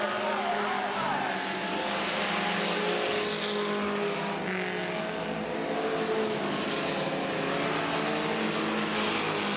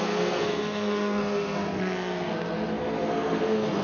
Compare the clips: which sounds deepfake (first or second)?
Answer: second